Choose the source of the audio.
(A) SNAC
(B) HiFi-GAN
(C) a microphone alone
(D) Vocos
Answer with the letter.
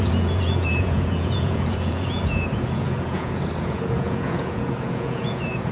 D